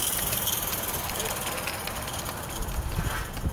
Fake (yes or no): no